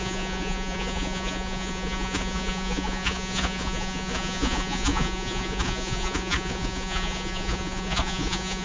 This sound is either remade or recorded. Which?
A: remade